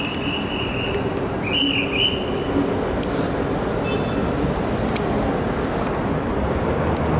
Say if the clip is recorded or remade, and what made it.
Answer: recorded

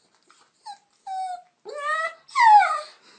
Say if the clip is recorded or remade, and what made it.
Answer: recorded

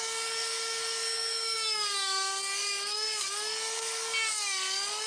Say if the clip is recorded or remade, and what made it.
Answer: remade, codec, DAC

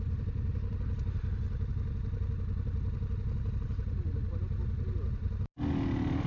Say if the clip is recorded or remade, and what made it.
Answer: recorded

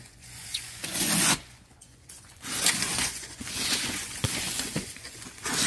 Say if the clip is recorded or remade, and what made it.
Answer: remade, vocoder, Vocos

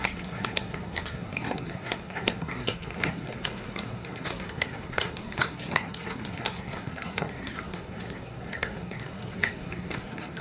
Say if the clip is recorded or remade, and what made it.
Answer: remade, codec, SNAC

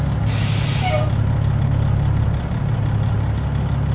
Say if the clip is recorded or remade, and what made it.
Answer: recorded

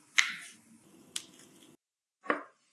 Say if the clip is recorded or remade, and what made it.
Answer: recorded